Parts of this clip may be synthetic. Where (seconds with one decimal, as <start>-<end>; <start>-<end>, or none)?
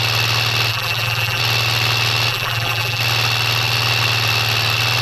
0.7-1.4; 2.3-3.0